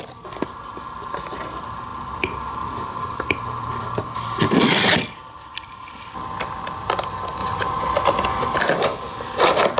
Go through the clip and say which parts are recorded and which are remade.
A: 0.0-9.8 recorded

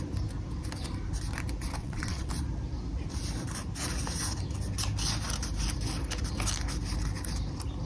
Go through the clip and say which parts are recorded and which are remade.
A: 0.0-1.8 recorded; 1.8-2.3 remade; 2.3-7.9 recorded

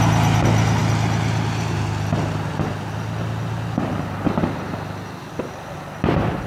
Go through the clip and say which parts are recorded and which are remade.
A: 0.0-6.5 recorded

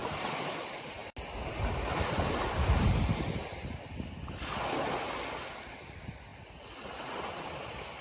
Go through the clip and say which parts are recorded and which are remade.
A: 0.0-8.0 recorded

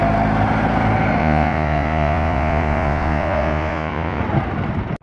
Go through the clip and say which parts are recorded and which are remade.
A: 0.0-1.2 recorded; 1.2-4.2 remade; 4.2-5.0 recorded